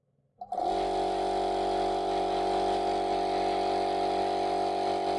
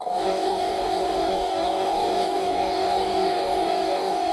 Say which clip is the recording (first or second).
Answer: first